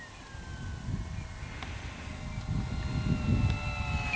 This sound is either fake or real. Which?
real